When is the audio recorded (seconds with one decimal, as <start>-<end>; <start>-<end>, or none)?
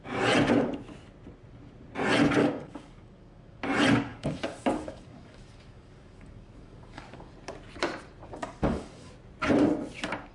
0.0-2.4; 3.6-4.1; 7.3-8.4; 9.1-10.3